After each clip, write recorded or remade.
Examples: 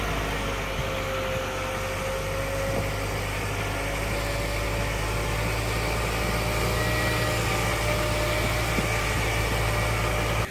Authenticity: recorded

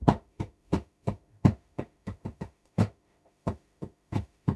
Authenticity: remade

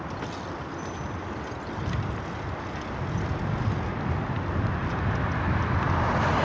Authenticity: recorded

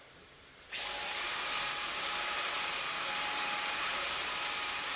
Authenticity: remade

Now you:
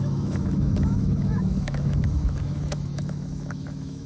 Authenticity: remade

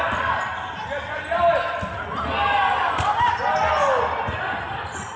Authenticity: recorded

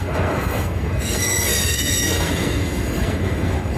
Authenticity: remade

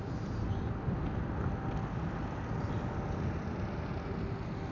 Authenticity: recorded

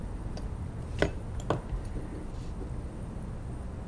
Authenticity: recorded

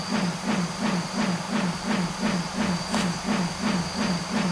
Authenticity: recorded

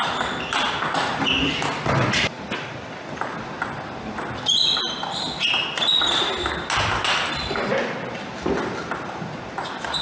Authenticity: recorded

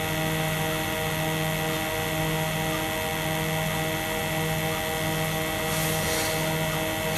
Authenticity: recorded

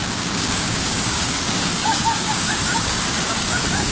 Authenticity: remade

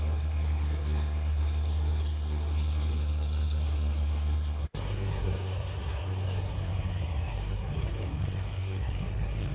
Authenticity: remade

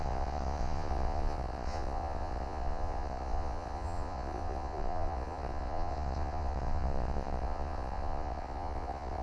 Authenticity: remade